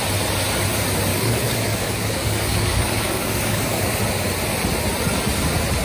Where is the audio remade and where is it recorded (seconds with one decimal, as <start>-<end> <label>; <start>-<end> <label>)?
0.0-1.1 recorded; 1.1-4.0 remade; 4.0-5.8 recorded